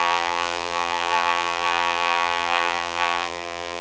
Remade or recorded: remade